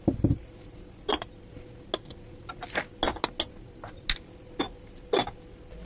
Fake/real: real